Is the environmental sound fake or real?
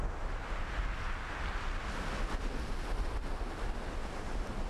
real